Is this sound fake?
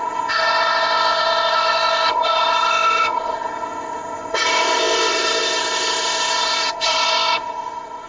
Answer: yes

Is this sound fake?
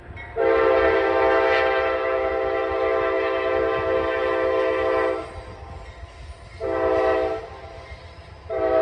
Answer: no